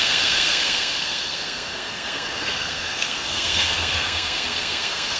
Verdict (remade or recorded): remade